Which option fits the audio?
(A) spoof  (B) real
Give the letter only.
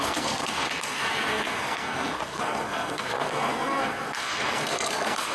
A